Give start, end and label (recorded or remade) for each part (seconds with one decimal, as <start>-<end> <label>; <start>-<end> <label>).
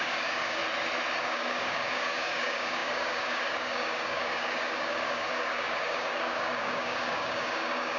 0.0-0.6 remade; 0.6-1.2 recorded; 1.2-8.0 remade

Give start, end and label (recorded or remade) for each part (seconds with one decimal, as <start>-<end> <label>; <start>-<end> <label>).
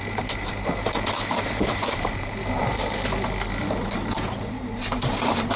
0.0-2.8 remade; 2.8-3.6 recorded; 3.6-5.6 remade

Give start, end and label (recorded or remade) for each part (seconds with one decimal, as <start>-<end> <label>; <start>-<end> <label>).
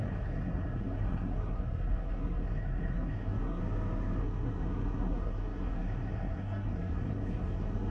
0.0-3.6 remade; 3.6-4.2 recorded; 4.2-7.9 remade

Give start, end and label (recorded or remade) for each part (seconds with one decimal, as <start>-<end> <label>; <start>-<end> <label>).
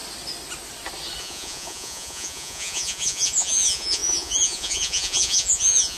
0.0-1.2 recorded; 1.2-6.0 remade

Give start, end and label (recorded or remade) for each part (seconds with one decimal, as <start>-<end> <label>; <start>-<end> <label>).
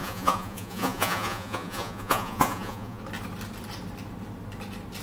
0.0-3.0 remade; 3.0-5.0 recorded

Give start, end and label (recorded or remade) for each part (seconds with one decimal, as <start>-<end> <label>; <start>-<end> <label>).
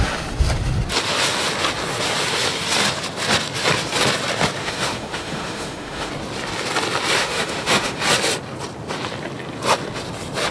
0.0-4.6 recorded; 4.6-6.1 remade; 6.1-7.2 recorded; 7.2-8.0 remade; 8.0-10.5 recorded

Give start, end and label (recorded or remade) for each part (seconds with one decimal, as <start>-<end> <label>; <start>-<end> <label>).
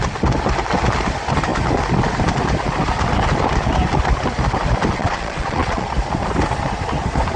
0.0-4.9 recorded; 4.9-5.9 remade; 5.9-7.4 recorded